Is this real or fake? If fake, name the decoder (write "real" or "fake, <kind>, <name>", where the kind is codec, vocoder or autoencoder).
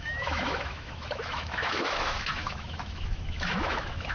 fake, autoencoder, DAC-VAE